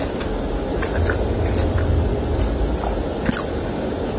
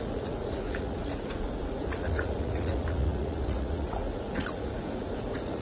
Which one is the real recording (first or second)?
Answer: first